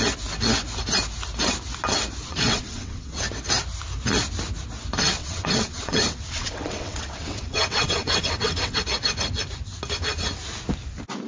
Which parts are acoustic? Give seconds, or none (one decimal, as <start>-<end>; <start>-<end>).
0.0-2.3; 3.2-5.2; 8.8-11.3